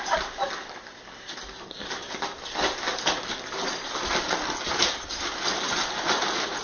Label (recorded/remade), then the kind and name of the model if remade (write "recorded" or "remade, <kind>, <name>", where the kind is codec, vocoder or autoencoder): recorded